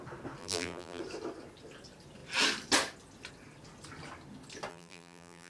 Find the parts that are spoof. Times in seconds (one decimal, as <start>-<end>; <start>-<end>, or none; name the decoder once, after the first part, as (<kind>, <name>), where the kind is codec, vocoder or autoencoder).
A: 0.4-1.0 (vocoder, BigVGAN v2); 4.7-5.5